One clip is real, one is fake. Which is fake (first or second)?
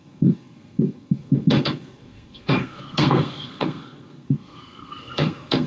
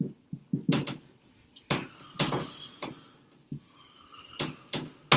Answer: first